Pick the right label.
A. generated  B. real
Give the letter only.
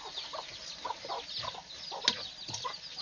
B